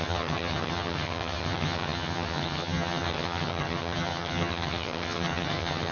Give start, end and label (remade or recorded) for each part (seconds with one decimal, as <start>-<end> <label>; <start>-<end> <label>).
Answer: 0.0-5.9 remade

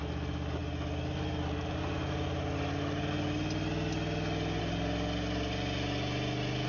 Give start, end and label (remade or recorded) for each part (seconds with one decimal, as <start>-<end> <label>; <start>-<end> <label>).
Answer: 0.0-6.7 recorded

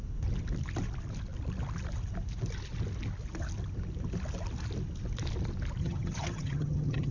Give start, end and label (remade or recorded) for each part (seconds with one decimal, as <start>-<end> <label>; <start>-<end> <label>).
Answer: 0.0-5.8 recorded; 5.8-7.1 remade

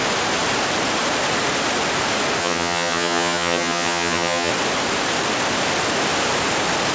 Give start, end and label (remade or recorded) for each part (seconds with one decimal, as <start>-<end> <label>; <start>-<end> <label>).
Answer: 0.0-2.4 recorded; 2.4-4.5 remade; 4.5-6.9 recorded

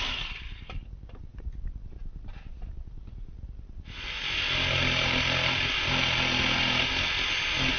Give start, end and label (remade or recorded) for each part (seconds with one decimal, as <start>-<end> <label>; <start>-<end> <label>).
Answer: 0.0-7.8 recorded

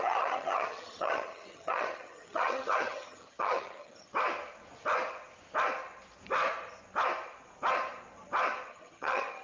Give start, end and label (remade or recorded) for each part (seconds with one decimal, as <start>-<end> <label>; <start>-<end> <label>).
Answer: 0.0-4.1 remade; 4.1-8.7 recorded; 8.7-9.4 remade